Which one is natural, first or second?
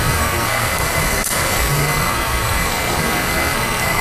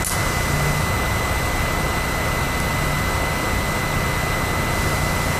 second